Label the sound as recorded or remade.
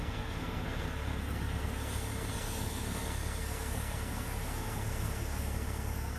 remade